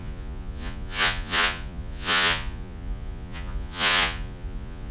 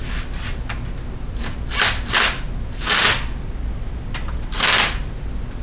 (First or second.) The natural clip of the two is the second